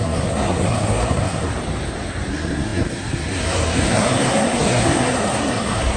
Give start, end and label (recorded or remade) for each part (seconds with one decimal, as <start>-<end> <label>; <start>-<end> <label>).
0.0-1.5 remade; 1.5-2.3 recorded; 2.3-6.0 remade